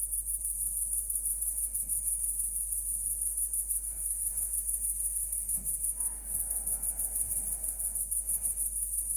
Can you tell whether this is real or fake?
fake